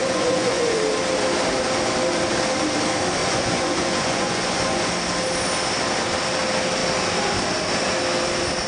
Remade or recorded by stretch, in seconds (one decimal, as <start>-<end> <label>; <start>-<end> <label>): 0.0-0.8 remade; 0.8-3.2 recorded; 3.2-4.8 remade; 4.8-8.7 recorded